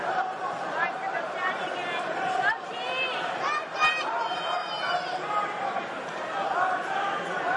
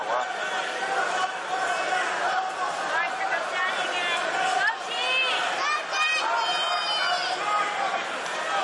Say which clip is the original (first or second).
second